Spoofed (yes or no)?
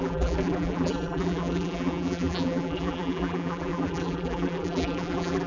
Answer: yes